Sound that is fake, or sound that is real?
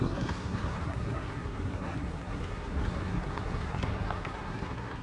fake